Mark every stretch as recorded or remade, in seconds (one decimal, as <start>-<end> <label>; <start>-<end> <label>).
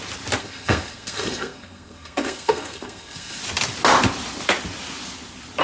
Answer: 0.0-0.4 recorded; 0.4-3.4 remade; 3.4-5.6 recorded